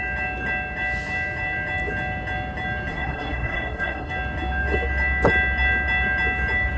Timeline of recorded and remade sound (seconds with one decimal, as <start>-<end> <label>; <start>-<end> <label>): 0.0-2.9 recorded; 2.9-4.1 remade; 4.1-6.8 recorded